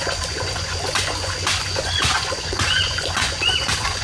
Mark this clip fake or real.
fake